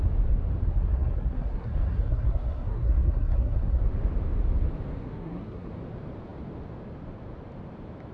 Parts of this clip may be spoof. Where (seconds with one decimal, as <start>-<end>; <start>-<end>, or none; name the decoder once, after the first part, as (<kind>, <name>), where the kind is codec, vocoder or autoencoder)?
0.6-3.8 (codec, SNAC); 5.0-5.7